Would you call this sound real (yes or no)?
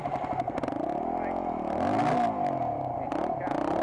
yes